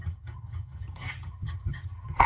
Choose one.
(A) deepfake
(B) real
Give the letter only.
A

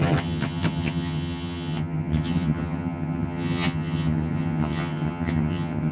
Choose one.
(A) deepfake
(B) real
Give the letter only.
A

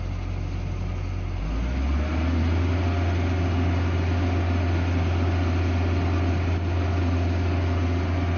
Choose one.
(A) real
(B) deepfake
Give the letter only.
A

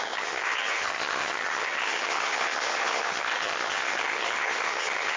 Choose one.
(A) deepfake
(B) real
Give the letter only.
A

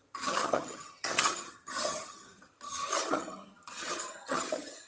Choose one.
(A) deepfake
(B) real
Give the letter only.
A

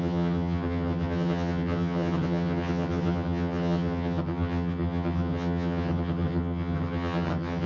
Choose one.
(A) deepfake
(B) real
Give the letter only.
A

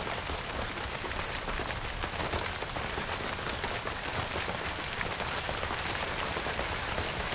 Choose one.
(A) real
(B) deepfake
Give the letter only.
A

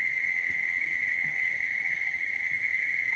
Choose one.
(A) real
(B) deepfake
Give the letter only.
B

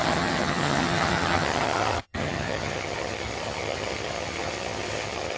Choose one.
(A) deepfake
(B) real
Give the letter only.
A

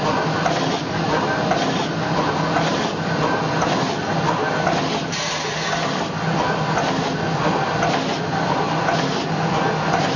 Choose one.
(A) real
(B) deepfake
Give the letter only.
A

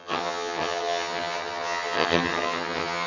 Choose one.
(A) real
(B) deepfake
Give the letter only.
B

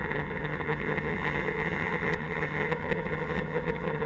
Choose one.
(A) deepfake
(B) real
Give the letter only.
A